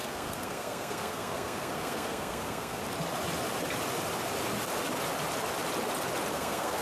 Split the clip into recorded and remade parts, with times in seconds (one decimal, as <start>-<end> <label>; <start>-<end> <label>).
0.0-2.8 remade; 2.8-6.3 recorded; 6.3-6.8 remade